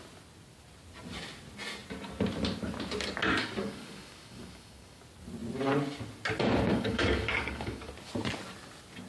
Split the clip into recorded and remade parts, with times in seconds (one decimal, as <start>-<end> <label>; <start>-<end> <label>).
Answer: 0.0-3.4 recorded; 3.4-5.0 remade; 5.0-6.7 recorded; 6.7-7.9 remade; 7.9-9.1 recorded